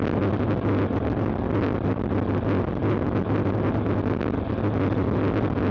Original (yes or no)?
yes